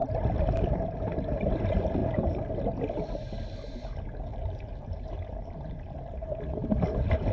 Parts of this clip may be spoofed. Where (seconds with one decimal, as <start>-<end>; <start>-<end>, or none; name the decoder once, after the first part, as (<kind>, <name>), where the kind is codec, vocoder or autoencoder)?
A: none